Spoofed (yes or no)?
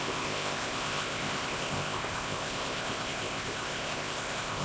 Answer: yes